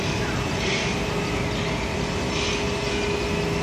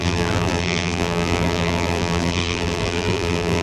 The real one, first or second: first